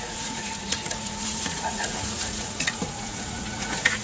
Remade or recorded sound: remade